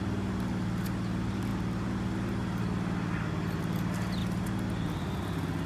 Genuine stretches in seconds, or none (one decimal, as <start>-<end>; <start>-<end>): 0.0-5.7